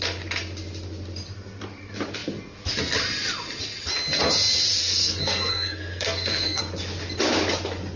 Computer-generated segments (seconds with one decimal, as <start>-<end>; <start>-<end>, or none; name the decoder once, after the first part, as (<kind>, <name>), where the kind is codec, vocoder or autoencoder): 4.8-6.6 (codec, SNAC)